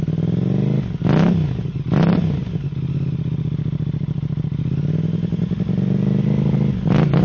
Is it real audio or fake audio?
real